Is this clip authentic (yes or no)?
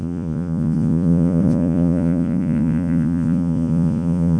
no